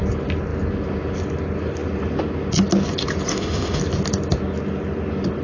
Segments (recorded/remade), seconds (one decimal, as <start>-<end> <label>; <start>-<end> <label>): 0.0-3.3 recorded; 3.3-3.8 remade; 3.8-5.4 recorded